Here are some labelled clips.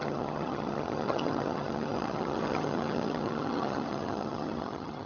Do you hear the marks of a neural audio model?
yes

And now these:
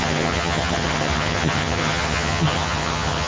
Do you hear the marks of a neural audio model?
yes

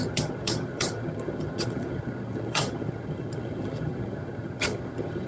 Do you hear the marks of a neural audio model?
yes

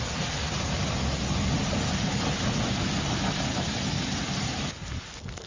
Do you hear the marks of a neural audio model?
no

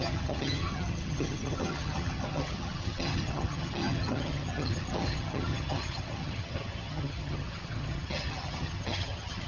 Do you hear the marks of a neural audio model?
yes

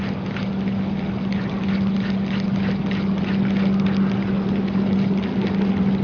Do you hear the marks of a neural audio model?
no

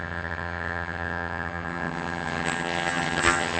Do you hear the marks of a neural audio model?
yes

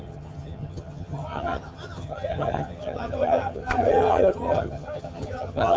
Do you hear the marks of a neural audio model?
yes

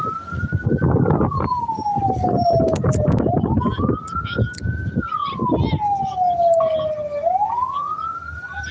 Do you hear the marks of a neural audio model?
no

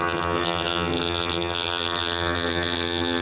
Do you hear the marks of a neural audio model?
yes